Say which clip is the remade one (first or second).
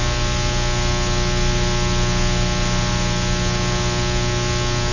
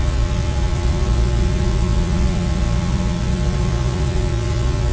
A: second